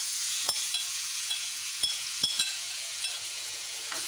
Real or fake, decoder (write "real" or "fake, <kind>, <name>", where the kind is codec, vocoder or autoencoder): fake, vocoder, Vocos